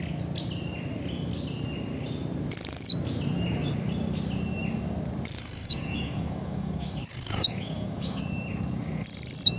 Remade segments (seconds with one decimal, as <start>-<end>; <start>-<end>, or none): 5.4-8.2